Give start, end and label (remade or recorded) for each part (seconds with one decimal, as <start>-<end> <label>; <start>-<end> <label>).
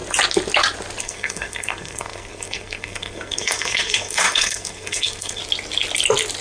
0.0-1.0 recorded; 1.0-5.4 remade; 5.4-6.4 recorded